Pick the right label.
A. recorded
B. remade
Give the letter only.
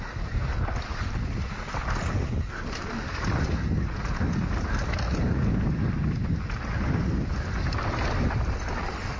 A